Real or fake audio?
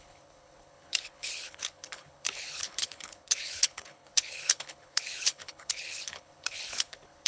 fake